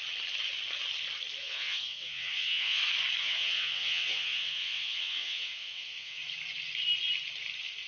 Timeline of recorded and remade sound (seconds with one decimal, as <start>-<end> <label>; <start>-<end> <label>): 0.0-1.4 recorded; 1.4-2.8 remade; 2.8-3.2 recorded; 3.2-6.2 remade; 6.2-7.9 recorded